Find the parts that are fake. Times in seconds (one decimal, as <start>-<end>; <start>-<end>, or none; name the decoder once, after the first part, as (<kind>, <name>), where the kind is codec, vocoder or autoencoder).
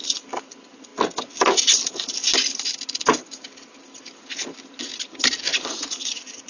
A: 5.5-6.5 (vocoder, Vocos)